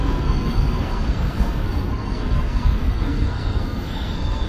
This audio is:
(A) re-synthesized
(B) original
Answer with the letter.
A